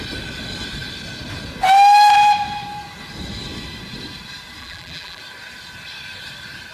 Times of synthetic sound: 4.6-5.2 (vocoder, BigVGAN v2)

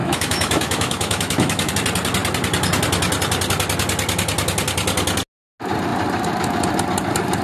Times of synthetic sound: 0.0-1.7 (autoencoder, DAC-VAE)

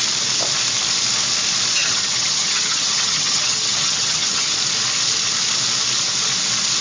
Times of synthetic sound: 1.8-4.5 (vocoder, HiFi-GAN)

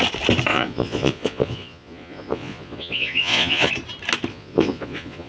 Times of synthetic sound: 0.5-3.7 (vocoder, Vocos); 4.3-5.3

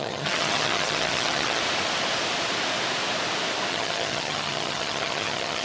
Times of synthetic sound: 0.0-1.6 (vocoder, HiFi-GAN); 3.7-5.6

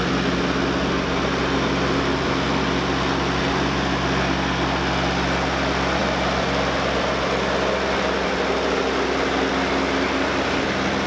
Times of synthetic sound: none